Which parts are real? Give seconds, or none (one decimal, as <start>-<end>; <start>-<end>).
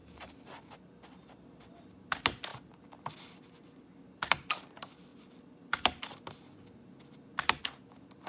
0.7-2.5; 3.1-8.3